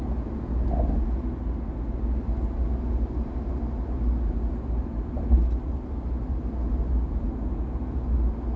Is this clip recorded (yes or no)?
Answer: yes